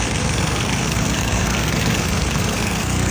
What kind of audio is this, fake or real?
fake